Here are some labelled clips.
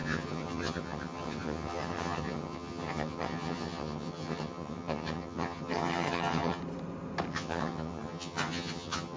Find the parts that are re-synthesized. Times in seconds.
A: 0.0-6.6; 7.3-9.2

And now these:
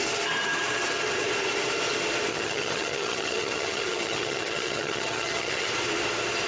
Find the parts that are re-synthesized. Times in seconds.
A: 2.3-5.7

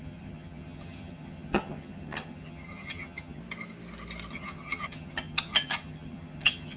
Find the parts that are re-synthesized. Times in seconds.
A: 0.0-3.4; 4.3-6.8

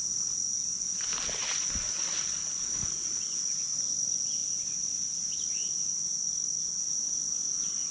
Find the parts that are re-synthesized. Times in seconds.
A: none

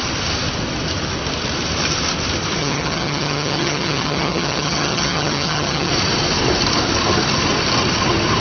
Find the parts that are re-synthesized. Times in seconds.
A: 2.6-5.9

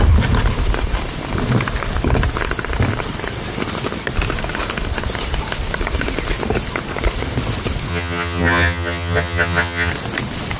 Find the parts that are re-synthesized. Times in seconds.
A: 7.9-9.9

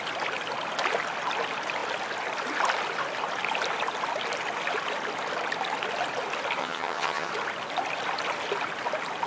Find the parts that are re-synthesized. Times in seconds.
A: 6.6-7.3

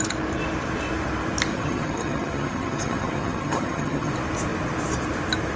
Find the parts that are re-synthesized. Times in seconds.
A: 1.5-4.1